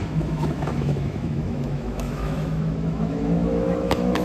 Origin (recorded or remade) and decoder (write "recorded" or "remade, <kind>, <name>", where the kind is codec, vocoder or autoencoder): remade, autoencoder, DAC-VAE